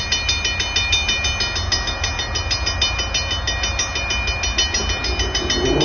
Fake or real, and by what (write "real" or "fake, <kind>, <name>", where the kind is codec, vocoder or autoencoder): real